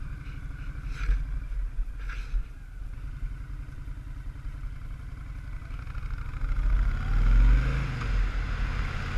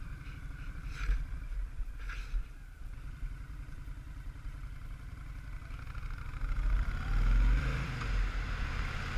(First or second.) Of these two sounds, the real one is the first